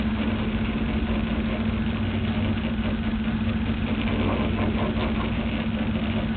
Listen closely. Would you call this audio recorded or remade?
recorded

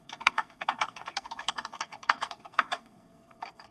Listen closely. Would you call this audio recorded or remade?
remade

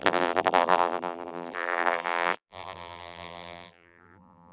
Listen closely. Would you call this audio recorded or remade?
remade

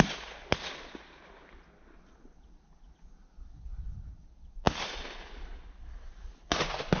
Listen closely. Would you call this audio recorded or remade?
recorded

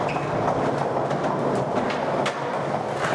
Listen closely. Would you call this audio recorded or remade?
recorded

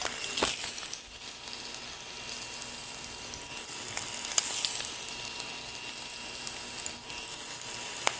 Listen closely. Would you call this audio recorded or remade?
recorded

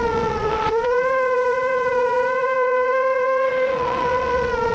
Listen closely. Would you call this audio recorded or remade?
remade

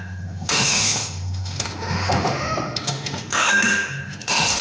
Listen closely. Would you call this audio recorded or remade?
remade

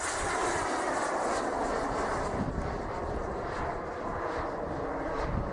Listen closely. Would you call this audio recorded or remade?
remade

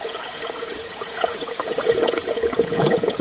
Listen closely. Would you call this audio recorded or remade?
remade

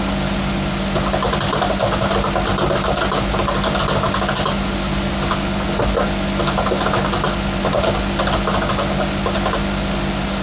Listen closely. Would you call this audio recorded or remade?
recorded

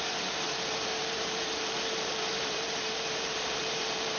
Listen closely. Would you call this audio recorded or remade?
remade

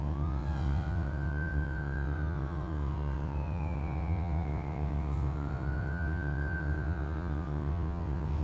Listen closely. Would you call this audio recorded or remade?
remade